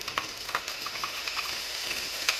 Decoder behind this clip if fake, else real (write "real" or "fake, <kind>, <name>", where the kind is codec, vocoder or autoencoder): fake, autoencoder, DAC-VAE